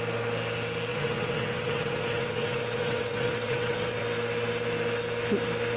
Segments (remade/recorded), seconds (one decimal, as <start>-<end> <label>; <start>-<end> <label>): 0.0-0.9 recorded; 0.9-4.0 remade; 4.0-5.8 recorded